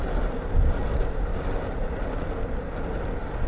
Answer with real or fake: real